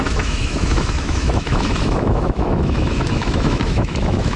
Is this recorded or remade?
remade